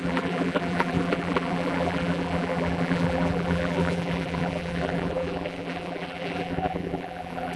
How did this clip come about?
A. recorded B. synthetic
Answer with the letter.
B